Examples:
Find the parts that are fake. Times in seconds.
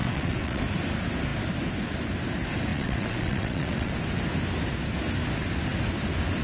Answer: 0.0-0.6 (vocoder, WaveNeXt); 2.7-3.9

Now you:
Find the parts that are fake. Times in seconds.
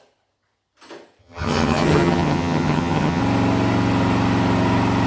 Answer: 1.2-3.2 (vocoder, HiFi-GAN)